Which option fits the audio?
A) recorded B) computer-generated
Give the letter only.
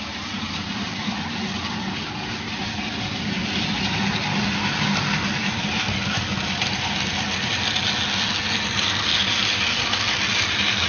A